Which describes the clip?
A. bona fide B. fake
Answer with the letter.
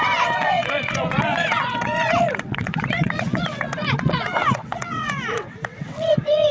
B